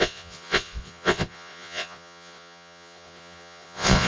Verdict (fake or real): fake